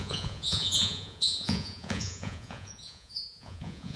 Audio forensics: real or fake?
fake